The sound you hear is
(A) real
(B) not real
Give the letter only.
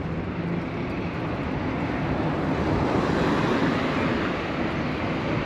A